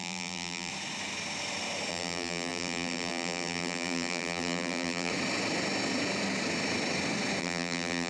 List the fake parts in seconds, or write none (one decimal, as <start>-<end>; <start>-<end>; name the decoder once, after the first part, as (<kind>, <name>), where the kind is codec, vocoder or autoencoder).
0.0-0.7 (vocoder, BigVGAN v2); 1.9-5.1; 7.4-8.1